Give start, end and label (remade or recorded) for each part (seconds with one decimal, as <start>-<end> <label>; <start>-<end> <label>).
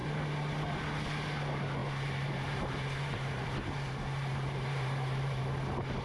0.0-0.8 remade; 0.8-1.8 recorded; 1.8-5.4 remade; 5.4-6.0 recorded